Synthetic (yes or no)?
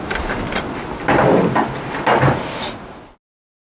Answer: no